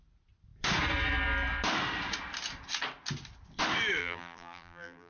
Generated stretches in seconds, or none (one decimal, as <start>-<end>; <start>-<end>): 4.0-5.1